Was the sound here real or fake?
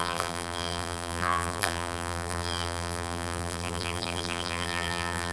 fake